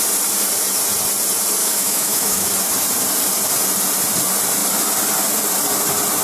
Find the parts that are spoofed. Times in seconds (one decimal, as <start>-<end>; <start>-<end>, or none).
1.6-2.5